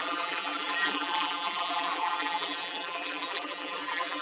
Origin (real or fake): fake